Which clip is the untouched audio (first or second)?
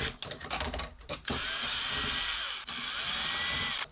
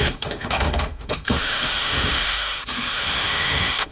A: first